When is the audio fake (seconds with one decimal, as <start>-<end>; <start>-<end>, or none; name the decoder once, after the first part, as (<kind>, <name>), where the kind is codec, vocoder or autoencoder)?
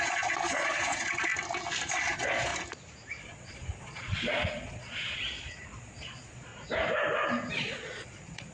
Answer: 0.0-1.3 (vocoder, Vocos); 2.1-2.5; 3.2-6.5; 7.5-8.5